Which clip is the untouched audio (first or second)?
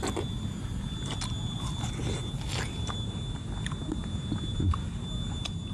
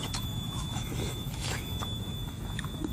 first